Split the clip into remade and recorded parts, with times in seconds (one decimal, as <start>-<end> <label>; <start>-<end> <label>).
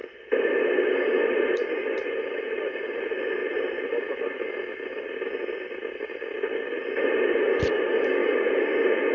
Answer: 0.0-9.1 recorded